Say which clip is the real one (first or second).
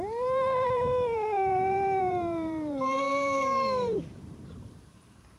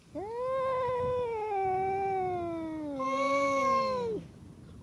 second